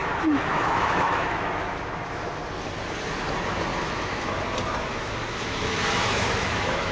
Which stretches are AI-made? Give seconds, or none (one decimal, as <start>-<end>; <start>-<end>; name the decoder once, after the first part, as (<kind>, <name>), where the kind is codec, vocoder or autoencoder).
0.0-2.4 (autoencoder, DAC-VAE); 3.7-4.3; 4.9-6.9